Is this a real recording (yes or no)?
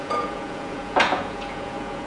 no